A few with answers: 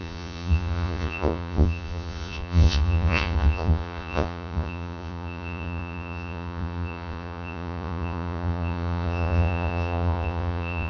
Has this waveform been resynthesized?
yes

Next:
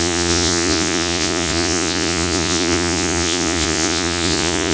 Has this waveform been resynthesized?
yes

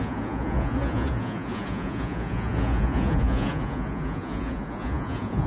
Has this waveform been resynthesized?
yes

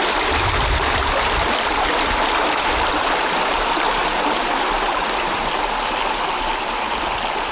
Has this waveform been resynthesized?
no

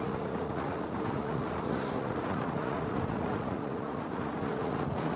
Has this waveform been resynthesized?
yes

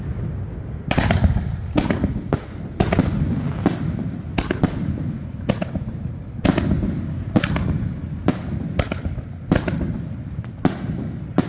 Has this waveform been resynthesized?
no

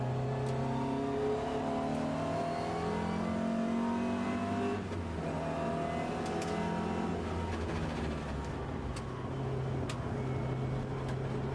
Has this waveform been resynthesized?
no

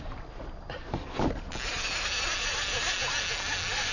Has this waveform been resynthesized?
no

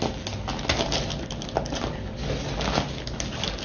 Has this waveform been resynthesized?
no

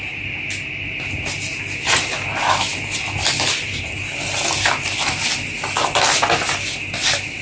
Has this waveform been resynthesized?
no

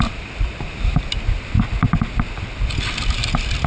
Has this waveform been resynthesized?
no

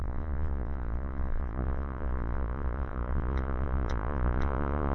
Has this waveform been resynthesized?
yes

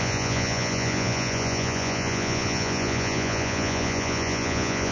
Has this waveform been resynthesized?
yes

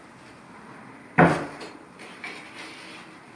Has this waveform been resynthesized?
no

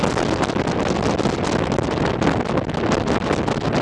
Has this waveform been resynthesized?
no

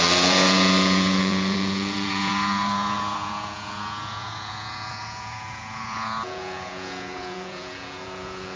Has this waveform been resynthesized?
yes